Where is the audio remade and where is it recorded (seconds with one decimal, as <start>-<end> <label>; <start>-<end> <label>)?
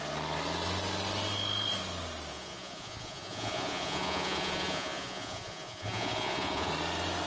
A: 0.0-2.3 recorded; 2.3-6.7 remade; 6.7-7.3 recorded